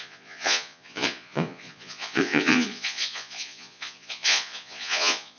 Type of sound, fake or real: fake